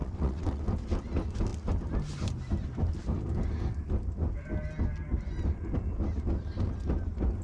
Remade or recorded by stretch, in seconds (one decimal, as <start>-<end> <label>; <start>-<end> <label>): 0.0-0.6 remade; 0.6-7.4 recorded